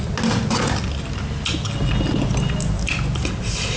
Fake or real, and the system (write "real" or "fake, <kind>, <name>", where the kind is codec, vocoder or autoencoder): real